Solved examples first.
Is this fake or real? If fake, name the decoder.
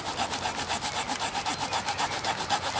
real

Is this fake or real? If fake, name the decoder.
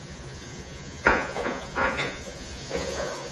fake, vocoder, Vocos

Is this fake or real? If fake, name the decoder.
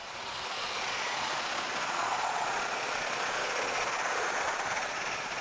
fake, vocoder, Vocos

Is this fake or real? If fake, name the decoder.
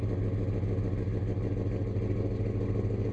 real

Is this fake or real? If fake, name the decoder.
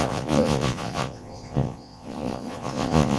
fake, vocoder, Vocos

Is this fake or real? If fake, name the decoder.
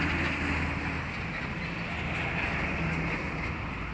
real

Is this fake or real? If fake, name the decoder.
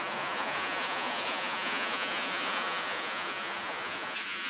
fake, vocoder, Vocos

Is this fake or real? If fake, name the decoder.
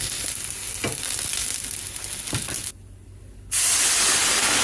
real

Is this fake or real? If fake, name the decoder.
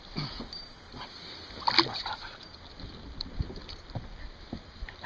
real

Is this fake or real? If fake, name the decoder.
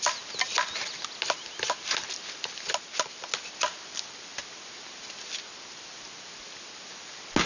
real